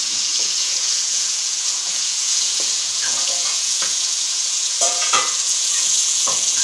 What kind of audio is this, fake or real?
fake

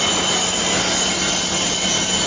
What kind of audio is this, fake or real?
real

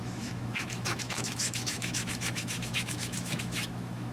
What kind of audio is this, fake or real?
fake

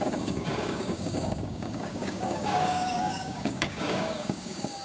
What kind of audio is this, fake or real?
fake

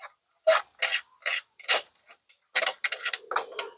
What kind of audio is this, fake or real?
real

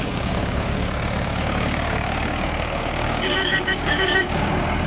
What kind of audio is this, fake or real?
fake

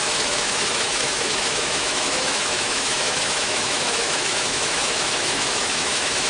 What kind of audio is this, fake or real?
fake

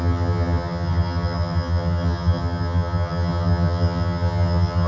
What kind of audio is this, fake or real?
fake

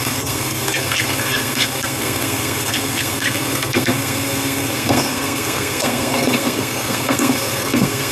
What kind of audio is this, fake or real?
fake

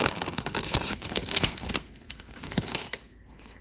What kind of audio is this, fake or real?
fake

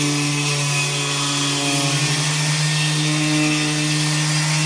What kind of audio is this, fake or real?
real